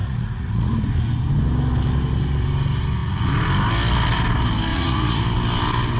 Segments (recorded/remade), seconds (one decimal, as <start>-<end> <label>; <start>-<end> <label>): 0.0-0.7 remade; 0.7-4.7 recorded; 4.7-5.2 remade; 5.2-6.0 recorded